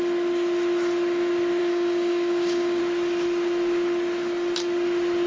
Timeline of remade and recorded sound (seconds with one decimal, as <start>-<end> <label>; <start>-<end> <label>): 0.0-1.6 recorded; 1.6-2.8 remade; 2.8-5.3 recorded